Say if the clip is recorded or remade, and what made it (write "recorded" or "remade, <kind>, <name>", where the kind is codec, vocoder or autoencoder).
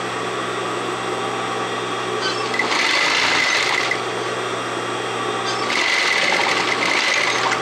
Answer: recorded